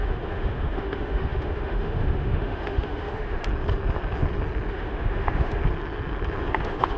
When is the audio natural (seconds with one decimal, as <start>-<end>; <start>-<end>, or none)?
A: 3.5-4.7; 5.6-6.5